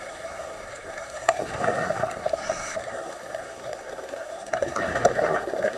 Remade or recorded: remade